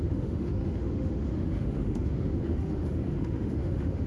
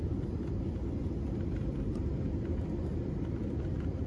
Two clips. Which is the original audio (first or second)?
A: second